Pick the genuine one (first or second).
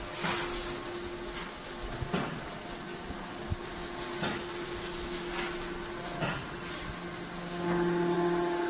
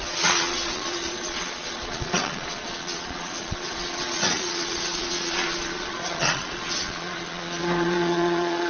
first